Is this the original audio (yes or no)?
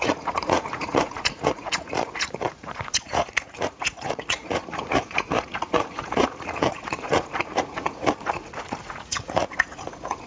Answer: no